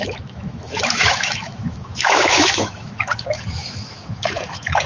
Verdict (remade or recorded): remade